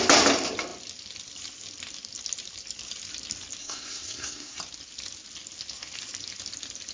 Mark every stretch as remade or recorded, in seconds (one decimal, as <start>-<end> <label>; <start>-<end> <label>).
0.0-3.6 recorded; 3.6-4.6 remade; 4.6-6.9 recorded